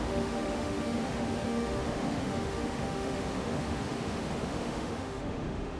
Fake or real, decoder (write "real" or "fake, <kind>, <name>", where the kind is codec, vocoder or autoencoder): fake, autoencoder, DAC-VAE